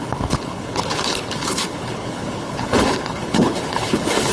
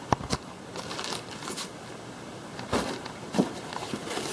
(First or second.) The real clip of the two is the second